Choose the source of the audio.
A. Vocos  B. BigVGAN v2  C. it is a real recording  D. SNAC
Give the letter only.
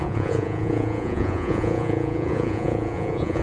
A